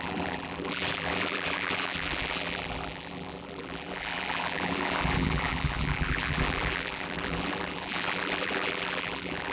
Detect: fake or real fake